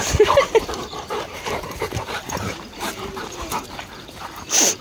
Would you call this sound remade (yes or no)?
yes